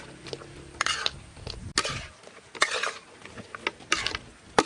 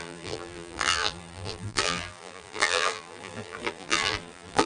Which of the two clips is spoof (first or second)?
second